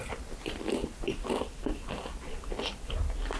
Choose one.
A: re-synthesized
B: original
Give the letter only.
B